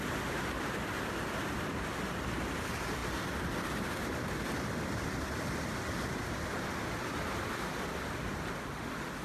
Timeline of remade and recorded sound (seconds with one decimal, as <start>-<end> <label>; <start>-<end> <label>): 0.0-9.2 recorded